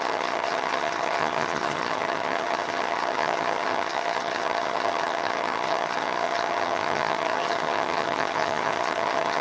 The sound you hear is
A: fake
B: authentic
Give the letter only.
A